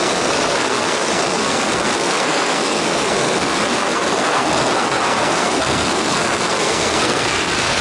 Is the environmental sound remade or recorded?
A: remade